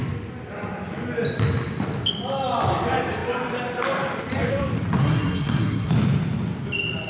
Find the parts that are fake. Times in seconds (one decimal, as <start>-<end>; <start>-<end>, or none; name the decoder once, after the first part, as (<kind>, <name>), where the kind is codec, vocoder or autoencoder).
5.0-5.9 (codec, SNAC)